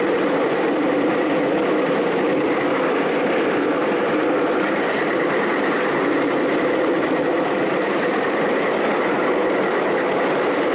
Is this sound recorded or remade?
recorded